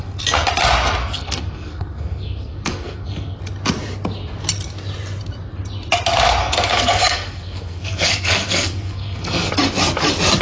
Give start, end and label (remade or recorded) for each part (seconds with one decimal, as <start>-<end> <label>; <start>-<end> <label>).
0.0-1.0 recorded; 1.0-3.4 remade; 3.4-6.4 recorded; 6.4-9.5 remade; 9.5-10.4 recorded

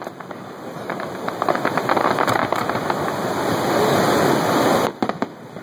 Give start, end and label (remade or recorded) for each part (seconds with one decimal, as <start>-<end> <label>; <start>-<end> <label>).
0.0-2.4 remade; 2.4-4.8 recorded; 4.8-5.6 remade

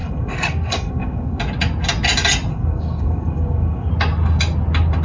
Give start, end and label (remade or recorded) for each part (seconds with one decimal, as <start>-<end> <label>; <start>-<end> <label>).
0.0-1.4 remade; 1.4-2.5 recorded; 2.5-3.9 remade; 3.9-5.0 recorded